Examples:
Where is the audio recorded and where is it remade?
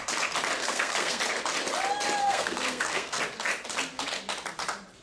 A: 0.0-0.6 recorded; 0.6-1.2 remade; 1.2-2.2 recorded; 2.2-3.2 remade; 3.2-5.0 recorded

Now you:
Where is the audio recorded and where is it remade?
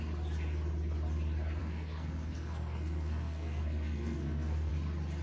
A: 0.0-1.6 recorded; 1.6-4.7 remade; 4.7-5.2 recorded